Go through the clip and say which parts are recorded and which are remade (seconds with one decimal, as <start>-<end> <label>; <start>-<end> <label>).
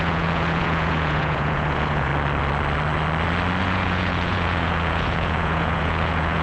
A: 0.0-2.1 remade; 2.1-3.6 recorded; 3.6-6.4 remade